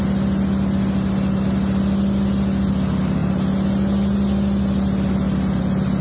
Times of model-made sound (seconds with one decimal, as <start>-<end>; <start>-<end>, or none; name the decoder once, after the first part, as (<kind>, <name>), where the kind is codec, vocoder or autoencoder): none